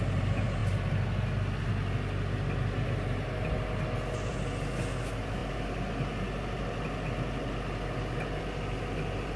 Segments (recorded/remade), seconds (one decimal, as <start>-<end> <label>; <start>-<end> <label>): 0.0-9.4 recorded